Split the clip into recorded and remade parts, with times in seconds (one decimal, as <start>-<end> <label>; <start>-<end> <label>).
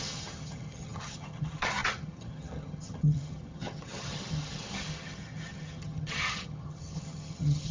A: 0.0-7.7 remade